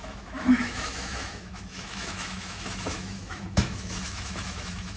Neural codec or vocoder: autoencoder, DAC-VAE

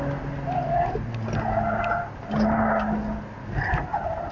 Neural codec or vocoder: none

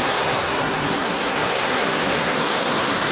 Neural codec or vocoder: codec, SNAC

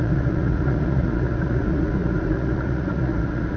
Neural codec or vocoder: vocoder, Vocos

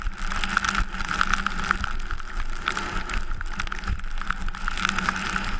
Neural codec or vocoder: none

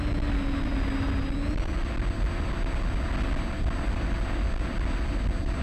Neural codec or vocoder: none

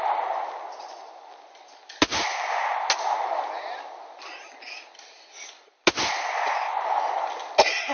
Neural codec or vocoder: none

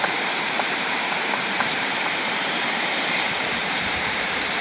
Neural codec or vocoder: vocoder, BigVGAN v2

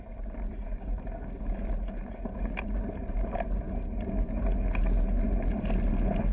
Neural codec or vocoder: none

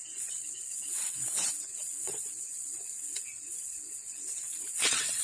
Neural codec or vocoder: vocoder, WaveNeXt